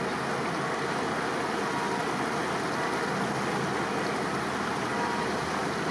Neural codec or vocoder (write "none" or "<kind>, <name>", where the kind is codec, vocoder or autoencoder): none